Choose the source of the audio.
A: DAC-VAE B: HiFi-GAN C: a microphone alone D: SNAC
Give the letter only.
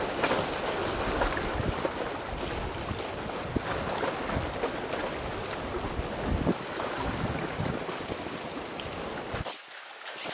C